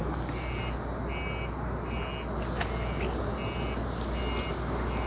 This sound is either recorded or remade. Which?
recorded